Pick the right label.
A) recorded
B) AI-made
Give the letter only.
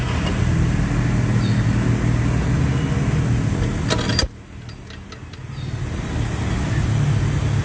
A